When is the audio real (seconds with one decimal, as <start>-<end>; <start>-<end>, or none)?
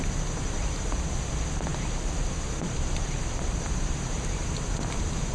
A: 0.0-1.7; 4.7-5.3